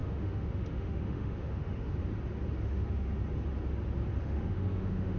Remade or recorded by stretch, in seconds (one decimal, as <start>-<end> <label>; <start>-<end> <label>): 0.0-2.0 remade; 2.0-2.6 recorded; 2.6-3.2 remade; 3.2-4.2 recorded; 4.2-5.2 remade